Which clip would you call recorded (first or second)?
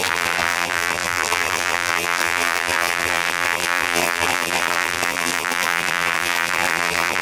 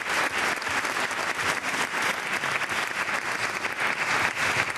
second